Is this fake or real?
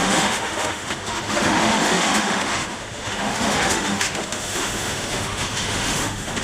fake